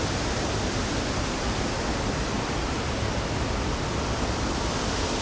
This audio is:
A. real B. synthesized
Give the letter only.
A